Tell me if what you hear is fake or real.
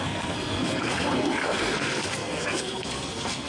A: fake